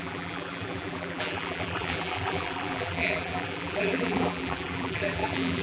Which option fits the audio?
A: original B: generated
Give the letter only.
B